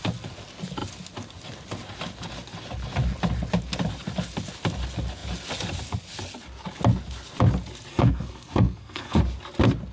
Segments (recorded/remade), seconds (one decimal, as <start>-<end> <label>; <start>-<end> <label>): 0.0-7.9 recorded; 7.9-9.2 remade; 9.2-9.9 recorded